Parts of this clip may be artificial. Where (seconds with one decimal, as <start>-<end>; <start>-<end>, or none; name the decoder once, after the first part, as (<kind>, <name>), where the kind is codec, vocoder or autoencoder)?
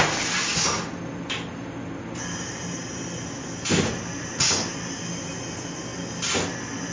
none